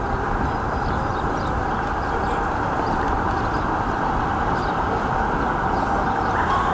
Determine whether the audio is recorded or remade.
recorded